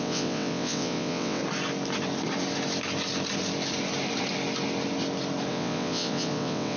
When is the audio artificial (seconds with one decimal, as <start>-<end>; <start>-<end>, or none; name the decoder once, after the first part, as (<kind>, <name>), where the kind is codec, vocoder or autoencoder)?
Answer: 0.0-1.4 (vocoder, WaveNeXt); 5.5-6.8